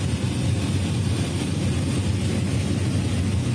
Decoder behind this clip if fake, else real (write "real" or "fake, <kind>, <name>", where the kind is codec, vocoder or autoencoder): real